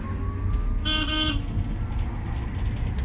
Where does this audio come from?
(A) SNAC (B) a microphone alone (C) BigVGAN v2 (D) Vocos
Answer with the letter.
B